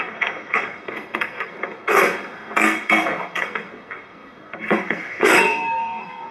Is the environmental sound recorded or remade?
remade